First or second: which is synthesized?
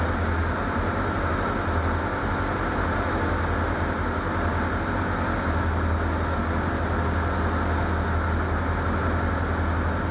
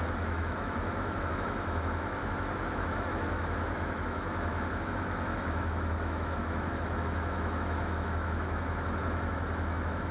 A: second